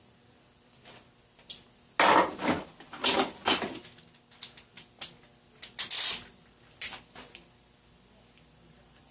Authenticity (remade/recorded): recorded